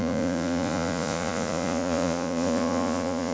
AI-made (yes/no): yes